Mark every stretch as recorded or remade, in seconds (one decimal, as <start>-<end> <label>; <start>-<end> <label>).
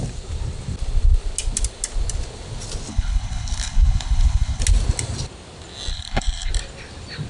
0.0-2.9 recorded; 2.9-4.6 remade; 4.6-5.9 recorded; 5.9-6.5 remade; 6.5-7.3 recorded